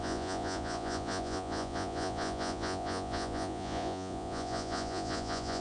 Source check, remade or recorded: remade